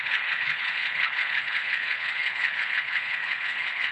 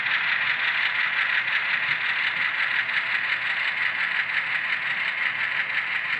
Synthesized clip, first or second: first